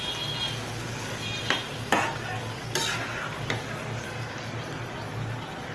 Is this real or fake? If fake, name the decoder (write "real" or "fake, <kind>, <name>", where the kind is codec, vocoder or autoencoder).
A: real